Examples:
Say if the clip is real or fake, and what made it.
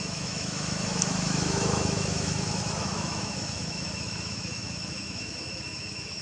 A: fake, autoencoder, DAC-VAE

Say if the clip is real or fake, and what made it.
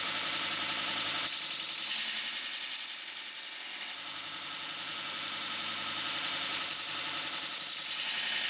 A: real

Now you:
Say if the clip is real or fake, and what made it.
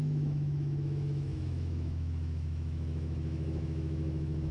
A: fake, autoencoder, DAC-VAE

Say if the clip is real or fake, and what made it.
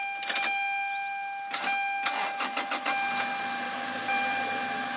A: real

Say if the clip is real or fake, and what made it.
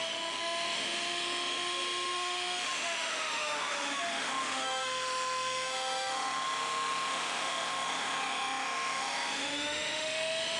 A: fake, autoencoder, DAC-VAE